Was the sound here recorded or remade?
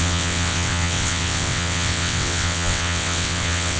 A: remade